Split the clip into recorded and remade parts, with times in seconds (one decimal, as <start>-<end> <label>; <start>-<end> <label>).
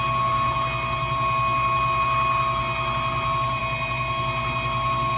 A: 0.0-5.2 recorded